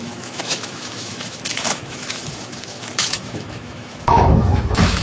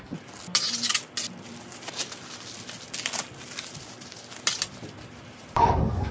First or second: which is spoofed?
first